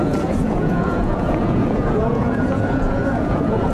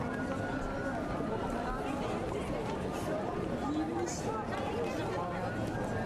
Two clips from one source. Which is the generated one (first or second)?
first